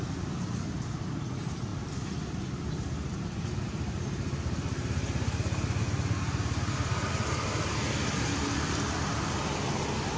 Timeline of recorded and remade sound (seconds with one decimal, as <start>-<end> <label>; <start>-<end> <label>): 0.0-10.2 recorded